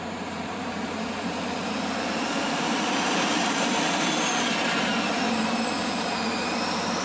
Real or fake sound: fake